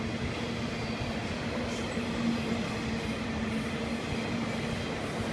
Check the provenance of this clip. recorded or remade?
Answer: recorded